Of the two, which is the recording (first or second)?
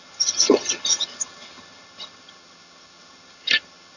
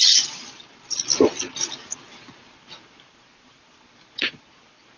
second